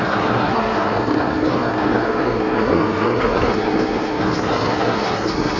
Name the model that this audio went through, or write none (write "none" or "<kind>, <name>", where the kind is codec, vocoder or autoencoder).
codec, SNAC